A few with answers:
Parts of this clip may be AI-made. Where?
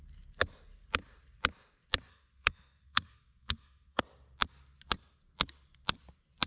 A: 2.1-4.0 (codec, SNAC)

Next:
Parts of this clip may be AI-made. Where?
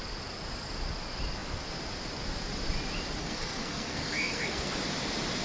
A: 3.2-4.7 (codec, SNAC)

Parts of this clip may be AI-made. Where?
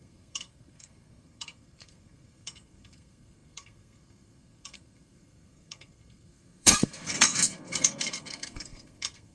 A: 0.0-9.3 (codec, SNAC)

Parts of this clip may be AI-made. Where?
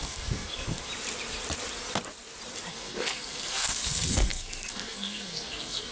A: 0.0-0.9 (codec, SNAC); 2.7-5.9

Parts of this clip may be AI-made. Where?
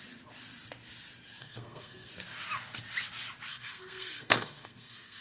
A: 1.4-2.1 (codec, SNAC); 3.5-5.2